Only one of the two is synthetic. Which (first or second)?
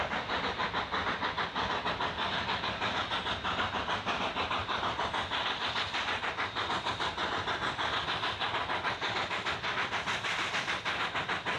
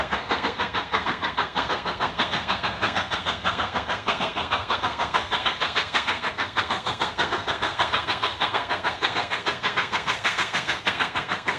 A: second